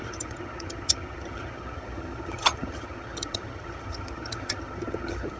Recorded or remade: remade